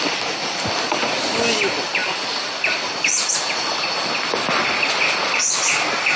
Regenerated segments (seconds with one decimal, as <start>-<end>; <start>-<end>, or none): none